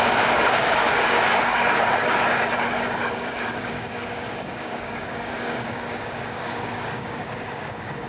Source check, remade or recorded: remade